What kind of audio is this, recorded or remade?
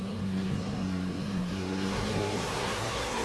remade